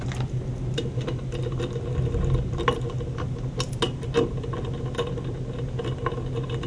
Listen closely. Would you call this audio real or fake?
real